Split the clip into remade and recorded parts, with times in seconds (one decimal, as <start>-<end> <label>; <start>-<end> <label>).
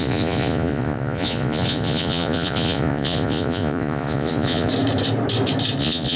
0.0-4.7 remade; 4.7-5.8 recorded; 5.8-6.2 remade